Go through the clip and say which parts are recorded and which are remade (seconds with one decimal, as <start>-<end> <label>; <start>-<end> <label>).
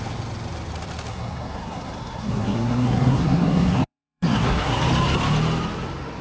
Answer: 0.0-1.1 recorded; 1.1-4.8 remade; 4.8-6.2 recorded